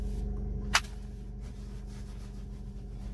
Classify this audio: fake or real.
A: real